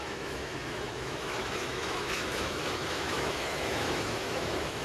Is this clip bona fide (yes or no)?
no